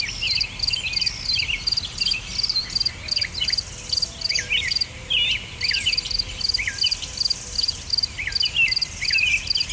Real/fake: real